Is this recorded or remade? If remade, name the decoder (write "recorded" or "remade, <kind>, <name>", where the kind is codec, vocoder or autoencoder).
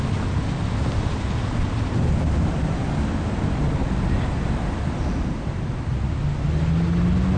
recorded